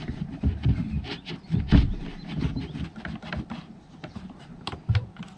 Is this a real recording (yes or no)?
no